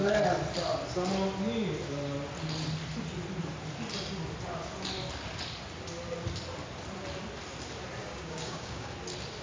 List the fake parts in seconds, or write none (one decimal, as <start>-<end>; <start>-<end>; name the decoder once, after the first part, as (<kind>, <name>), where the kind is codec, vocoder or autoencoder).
8.0-8.9 (codec, DAC)